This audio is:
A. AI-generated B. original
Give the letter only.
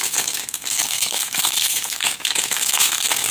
A